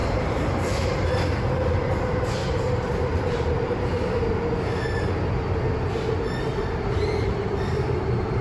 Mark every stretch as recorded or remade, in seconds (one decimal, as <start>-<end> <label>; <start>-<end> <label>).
0.0-1.1 remade; 1.1-2.4 recorded; 2.4-3.8 remade; 3.8-6.5 recorded; 6.5-8.4 remade